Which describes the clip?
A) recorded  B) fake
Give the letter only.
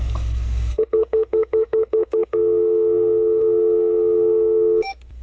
B